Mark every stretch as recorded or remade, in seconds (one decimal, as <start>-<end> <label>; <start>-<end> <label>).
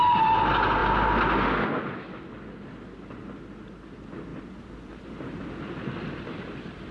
0.0-4.3 recorded; 4.3-6.9 remade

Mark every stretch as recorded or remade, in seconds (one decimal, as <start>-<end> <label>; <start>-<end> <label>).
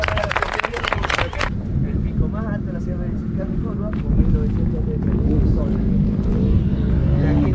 0.0-3.2 recorded; 3.2-3.8 remade; 3.8-7.5 recorded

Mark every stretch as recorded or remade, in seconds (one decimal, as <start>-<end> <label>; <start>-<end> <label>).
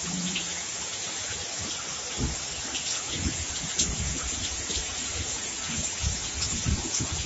0.0-1.4 remade; 1.4-2.8 recorded; 2.8-7.3 remade